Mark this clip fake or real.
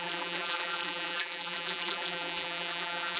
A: fake